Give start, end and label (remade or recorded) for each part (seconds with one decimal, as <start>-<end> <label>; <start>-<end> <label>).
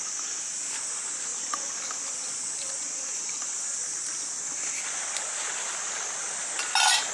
0.0-7.1 recorded